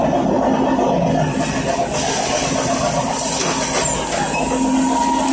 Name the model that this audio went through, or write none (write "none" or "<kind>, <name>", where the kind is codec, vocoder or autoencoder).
none